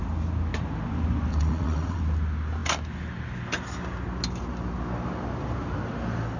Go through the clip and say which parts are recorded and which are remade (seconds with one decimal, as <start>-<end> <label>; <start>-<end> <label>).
0.0-1.3 recorded; 1.3-2.0 remade; 2.0-6.4 recorded